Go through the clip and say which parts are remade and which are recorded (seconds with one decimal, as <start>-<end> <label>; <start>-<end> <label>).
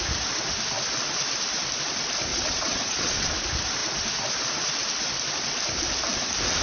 0.0-2.3 recorded; 2.3-3.3 remade; 3.3-6.6 recorded